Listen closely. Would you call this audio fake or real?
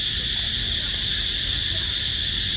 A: real